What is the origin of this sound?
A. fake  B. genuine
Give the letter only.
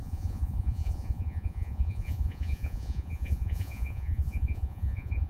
A